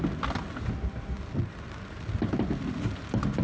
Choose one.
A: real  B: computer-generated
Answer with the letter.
A